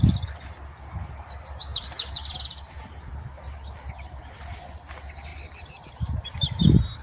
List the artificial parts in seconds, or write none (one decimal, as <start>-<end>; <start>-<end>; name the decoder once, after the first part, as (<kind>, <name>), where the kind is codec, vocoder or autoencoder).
5.3-5.9 (vocoder, BigVGAN v2)